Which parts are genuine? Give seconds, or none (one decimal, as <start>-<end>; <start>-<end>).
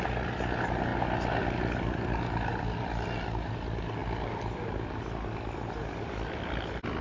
0.0-7.0